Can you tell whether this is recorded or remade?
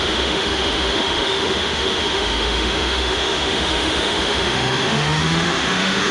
remade